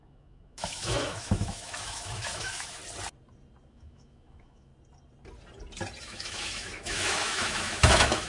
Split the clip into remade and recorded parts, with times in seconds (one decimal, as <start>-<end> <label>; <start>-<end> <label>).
0.0-2.8 remade; 2.8-3.7 recorded; 3.7-4.7 remade; 4.7-6.0 recorded; 6.0-8.3 remade